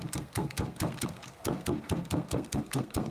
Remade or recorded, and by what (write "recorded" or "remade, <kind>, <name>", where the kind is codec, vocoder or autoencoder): remade, codec, SNAC